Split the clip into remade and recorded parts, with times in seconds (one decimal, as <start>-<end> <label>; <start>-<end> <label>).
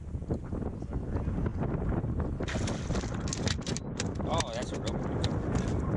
0.0-6.0 recorded